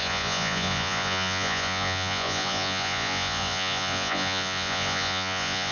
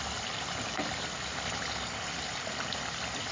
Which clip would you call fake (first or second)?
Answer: first